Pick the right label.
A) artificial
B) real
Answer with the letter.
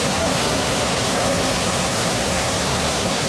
A